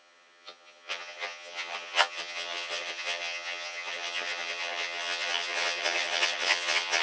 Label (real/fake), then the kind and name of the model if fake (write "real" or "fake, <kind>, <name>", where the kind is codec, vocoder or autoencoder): fake, vocoder, HiFi-GAN